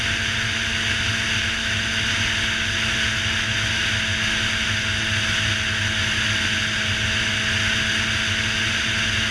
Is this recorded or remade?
recorded